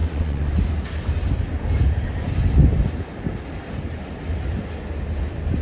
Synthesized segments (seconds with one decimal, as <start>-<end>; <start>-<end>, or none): 0.0-0.5

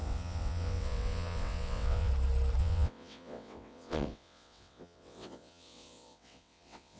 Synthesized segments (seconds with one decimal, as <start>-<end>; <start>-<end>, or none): 0.0-2.1; 2.6-7.0

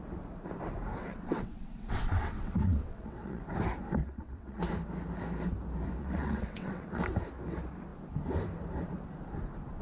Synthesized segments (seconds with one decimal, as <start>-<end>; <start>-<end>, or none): 1.0-3.4; 4.0-4.6; 6.0-7.0